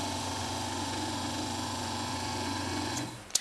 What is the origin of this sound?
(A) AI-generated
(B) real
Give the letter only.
A